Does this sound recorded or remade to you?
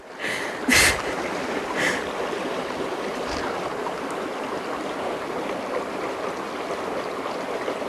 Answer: recorded